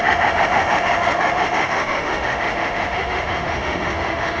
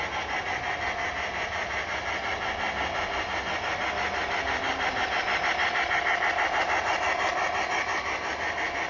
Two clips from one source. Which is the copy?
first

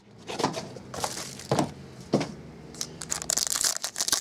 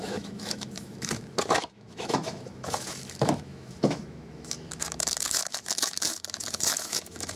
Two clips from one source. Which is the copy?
second